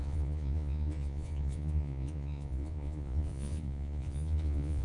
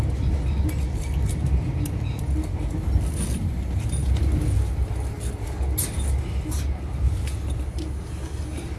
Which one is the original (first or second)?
second